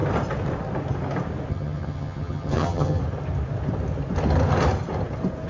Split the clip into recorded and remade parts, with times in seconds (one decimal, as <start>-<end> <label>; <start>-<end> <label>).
0.0-1.5 recorded; 1.5-3.0 remade; 3.0-5.5 recorded